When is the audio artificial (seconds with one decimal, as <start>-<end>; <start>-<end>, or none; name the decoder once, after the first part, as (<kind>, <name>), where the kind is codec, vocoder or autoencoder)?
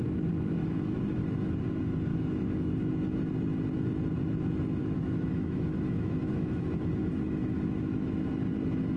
0.6-1.6 (autoencoder, DAC-VAE); 2.1-2.7; 4.8-8.3